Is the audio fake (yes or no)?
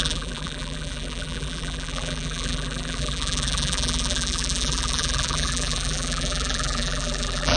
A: yes